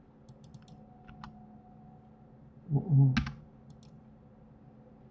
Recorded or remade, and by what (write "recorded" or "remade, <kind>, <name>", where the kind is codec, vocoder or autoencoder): recorded